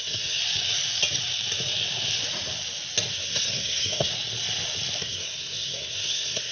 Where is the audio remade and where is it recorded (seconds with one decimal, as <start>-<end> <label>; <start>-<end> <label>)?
0.0-0.4 remade; 0.4-3.1 recorded; 3.1-4.1 remade; 4.1-5.0 recorded; 5.0-6.5 remade